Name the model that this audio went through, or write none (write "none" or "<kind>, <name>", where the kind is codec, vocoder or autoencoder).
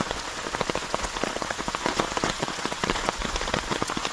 vocoder, Vocos